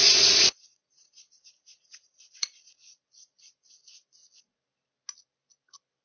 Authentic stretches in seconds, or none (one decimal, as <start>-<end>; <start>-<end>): 3.6-6.0